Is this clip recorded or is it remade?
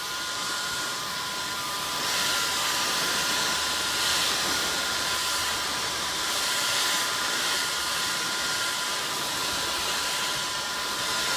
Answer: remade